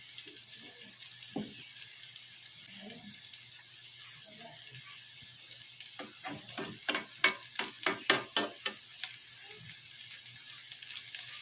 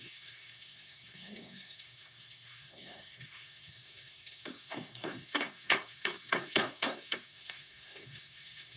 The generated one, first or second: second